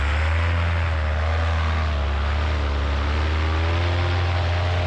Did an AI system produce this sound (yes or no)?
no